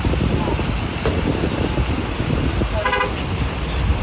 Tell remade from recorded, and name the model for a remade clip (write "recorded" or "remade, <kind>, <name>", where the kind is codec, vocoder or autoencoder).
recorded